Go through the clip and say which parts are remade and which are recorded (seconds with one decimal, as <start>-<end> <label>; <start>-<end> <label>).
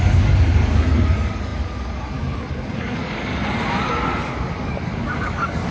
0.0-3.3 remade; 3.3-3.9 recorded; 3.9-5.7 remade